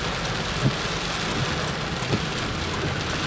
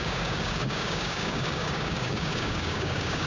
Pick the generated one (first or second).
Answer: second